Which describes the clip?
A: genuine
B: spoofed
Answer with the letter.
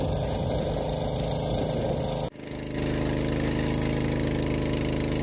A